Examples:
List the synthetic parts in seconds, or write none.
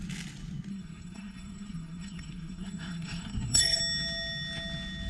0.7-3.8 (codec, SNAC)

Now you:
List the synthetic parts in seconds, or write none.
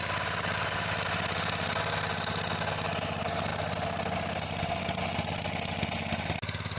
none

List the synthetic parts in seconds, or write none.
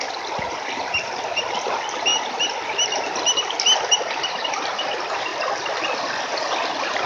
none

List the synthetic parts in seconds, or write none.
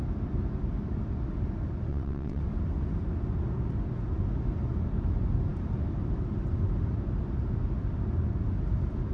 1.9-2.4 (vocoder, WaveNeXt)